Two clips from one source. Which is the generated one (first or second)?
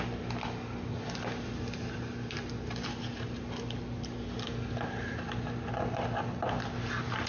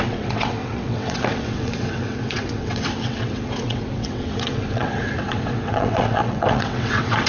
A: second